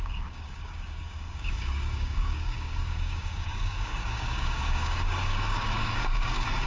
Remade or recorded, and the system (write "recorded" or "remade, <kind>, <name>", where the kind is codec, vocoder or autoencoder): remade, codec, DAC